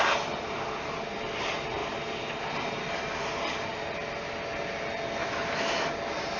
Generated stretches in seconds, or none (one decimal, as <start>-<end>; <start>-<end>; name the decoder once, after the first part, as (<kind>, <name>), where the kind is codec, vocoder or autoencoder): 5.2-5.9 (autoencoder, DAC-VAE)